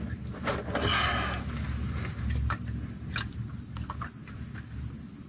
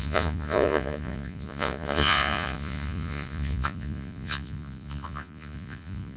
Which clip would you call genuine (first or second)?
first